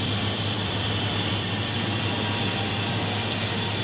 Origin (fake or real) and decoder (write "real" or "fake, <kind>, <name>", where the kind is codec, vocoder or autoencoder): fake, vocoder, BigVGAN v2